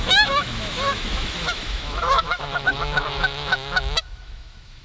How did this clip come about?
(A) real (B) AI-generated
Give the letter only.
B